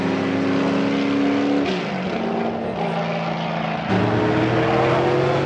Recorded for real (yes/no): yes